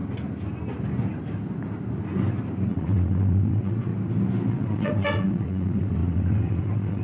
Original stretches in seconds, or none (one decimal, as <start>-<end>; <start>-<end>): 0.0-2.7; 3.9-4.5